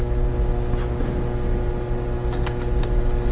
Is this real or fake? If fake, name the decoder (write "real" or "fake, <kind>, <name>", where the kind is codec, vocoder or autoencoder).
real